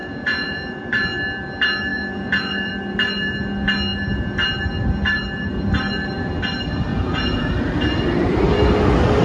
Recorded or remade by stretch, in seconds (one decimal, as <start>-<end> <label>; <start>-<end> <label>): 0.0-0.8 remade; 0.8-1.9 recorded; 1.9-2.7 remade; 2.7-6.9 recorded; 6.9-7.5 remade; 7.5-9.2 recorded